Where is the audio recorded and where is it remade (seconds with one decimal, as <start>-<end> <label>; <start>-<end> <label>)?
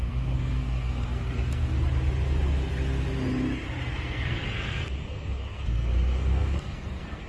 0.0-1.8 remade; 1.8-3.9 recorded; 3.9-7.3 remade